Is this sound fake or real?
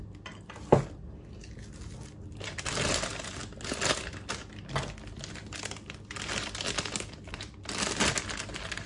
real